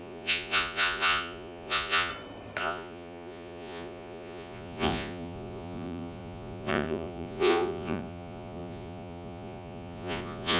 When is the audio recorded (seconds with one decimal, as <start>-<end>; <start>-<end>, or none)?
2.1-2.6